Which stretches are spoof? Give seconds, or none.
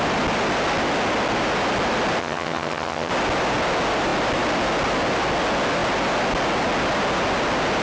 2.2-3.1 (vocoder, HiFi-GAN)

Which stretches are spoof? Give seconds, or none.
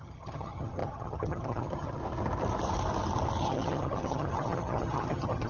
0.0-2.0 (vocoder, HiFi-GAN); 3.4-5.5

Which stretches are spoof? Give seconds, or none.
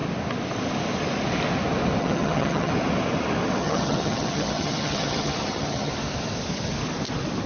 2.0-2.7 (vocoder, HiFi-GAN); 3.6-5.9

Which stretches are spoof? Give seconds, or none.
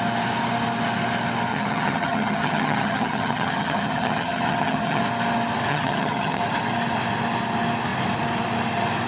1.5-5.0 (vocoder, HiFi-GAN); 5.7-6.4